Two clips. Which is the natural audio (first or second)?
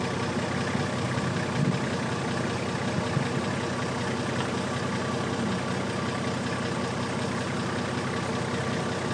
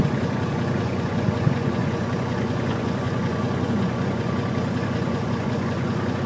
first